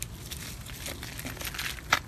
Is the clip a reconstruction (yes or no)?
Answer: no